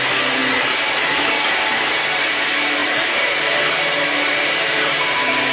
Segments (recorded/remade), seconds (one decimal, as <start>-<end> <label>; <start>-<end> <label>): 0.0-0.4 recorded; 0.4-1.5 remade; 1.5-2.8 recorded; 2.8-3.6 remade; 3.6-4.3 recorded; 4.3-5.0 remade; 5.0-5.5 recorded